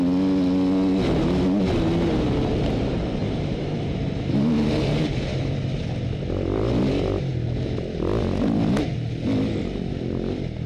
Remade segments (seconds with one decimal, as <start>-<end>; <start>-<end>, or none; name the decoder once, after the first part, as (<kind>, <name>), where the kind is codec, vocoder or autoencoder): 3.2-5.4 (vocoder, BigVGAN v2)